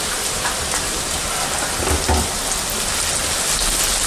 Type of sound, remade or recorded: recorded